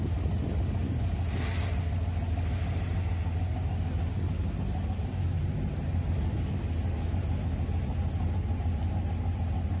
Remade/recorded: recorded